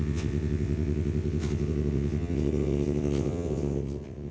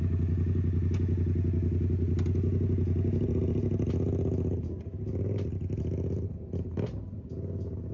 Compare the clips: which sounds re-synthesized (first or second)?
first